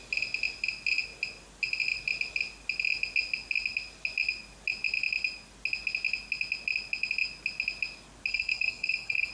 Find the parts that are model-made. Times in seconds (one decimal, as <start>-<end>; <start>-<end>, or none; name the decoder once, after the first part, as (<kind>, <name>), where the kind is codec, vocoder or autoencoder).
8.3-9.3 (codec, SNAC)